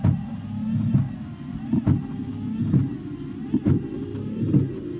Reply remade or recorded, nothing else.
recorded